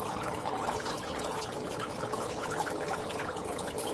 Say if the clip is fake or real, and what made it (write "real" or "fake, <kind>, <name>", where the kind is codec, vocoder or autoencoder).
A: fake, codec, HILCodec